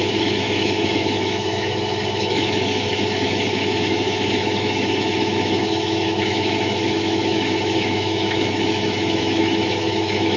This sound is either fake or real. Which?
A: fake